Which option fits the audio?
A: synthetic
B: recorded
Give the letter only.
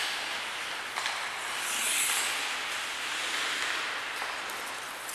B